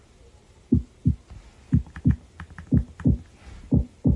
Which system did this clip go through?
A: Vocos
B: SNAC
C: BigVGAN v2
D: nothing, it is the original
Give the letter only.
D